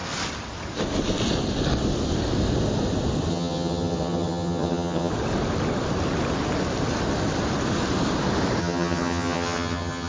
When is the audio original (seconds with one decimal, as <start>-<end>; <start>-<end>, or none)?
0.0-3.3; 5.1-8.6